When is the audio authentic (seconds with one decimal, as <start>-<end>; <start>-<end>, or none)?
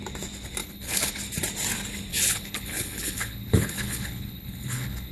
0.0-0.6; 1.1-2.1